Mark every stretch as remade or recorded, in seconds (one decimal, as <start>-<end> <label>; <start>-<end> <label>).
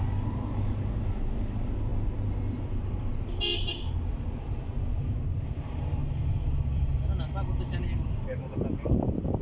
0.0-6.0 recorded; 6.0-8.1 remade; 8.1-9.4 recorded